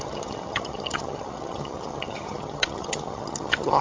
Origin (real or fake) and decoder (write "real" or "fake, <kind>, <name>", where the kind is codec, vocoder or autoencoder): fake, vocoder, HiFi-GAN